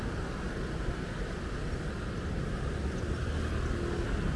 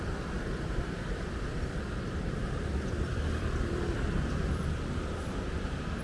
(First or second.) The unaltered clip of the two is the first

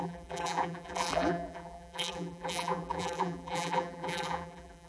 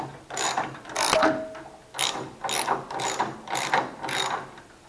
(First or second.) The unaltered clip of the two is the second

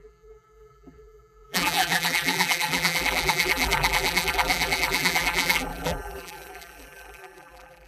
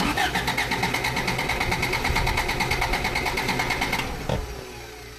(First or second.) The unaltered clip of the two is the second